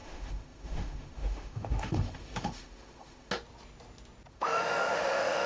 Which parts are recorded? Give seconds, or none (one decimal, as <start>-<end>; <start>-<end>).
3.3-4.3